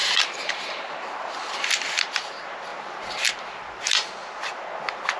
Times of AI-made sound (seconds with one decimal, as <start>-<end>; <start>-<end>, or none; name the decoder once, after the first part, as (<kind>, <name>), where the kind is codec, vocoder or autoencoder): 0.0-1.5 (vocoder, BigVGAN v2); 2.7-3.3